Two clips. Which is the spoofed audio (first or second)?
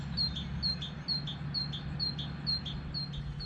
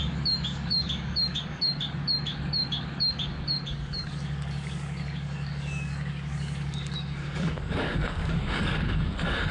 second